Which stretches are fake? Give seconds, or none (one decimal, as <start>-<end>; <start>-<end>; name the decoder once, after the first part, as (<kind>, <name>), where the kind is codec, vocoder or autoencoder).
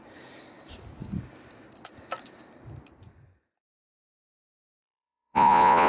4.8-5.9 (vocoder, Vocos)